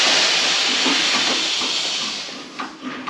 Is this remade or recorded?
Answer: recorded